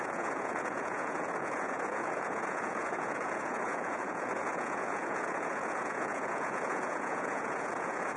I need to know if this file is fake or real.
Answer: fake